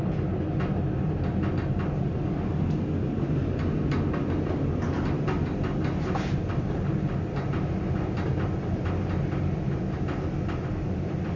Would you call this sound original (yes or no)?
yes